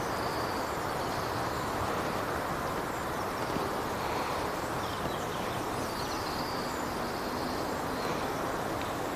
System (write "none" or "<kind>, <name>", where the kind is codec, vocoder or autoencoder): none